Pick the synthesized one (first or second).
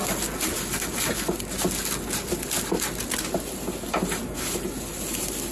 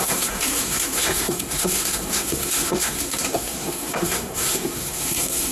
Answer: second